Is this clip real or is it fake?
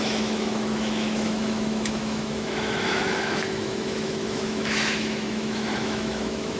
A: fake